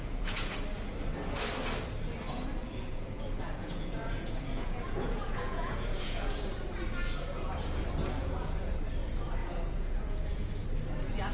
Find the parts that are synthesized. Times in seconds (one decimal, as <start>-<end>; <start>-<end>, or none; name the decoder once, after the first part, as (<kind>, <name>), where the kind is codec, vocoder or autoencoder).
0.0-0.5 (vocoder, Vocos); 2.6-6.3; 8.2-8.8; 9.4-10.5